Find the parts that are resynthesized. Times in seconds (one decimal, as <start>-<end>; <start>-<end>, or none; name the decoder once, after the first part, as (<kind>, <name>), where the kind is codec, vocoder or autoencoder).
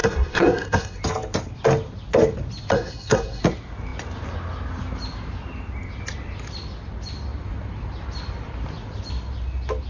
0.0-1.0 (codec, SNAC); 2.7-3.4